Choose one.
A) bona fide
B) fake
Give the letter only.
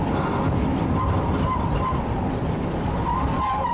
A